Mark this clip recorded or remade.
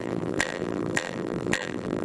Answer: remade